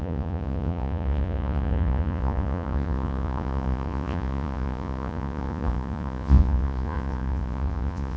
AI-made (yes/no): yes